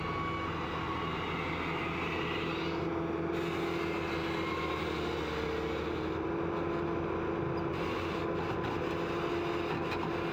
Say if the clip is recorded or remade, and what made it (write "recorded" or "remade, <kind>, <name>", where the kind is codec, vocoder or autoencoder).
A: recorded